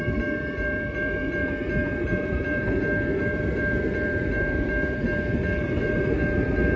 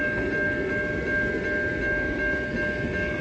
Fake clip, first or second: first